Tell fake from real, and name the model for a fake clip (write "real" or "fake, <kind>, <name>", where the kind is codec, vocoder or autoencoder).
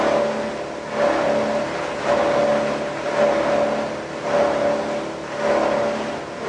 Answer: real